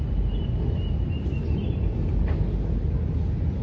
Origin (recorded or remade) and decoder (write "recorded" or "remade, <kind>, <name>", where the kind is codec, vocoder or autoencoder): recorded